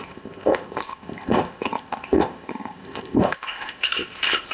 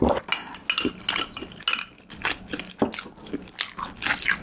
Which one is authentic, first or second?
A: second